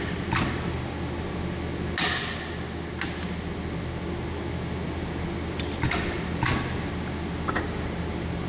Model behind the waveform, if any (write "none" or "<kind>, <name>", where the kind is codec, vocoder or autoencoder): none